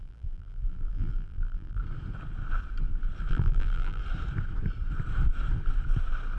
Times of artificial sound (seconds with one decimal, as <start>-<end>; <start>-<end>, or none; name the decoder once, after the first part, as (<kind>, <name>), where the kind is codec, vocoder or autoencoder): 0.0-1.8 (vocoder, BigVGAN v2); 3.3-4.0